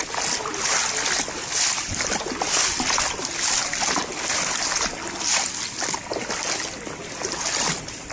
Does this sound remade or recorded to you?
recorded